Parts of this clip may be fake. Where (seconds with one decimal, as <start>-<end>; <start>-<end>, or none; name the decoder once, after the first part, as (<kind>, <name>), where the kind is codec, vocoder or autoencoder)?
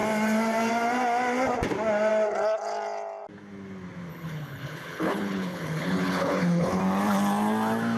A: 4.1-6.8 (codec, HILCodec)